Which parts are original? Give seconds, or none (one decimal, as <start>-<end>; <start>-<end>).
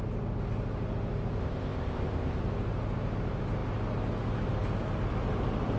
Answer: 0.0-1.4; 2.4-5.8